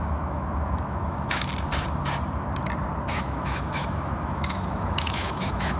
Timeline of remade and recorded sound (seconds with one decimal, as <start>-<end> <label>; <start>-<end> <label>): 0.0-1.5 remade; 1.5-3.1 recorded; 3.1-5.8 remade